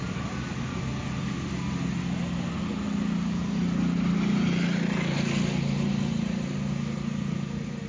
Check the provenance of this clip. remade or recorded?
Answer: recorded